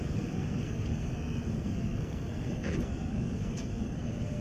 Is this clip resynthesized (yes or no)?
yes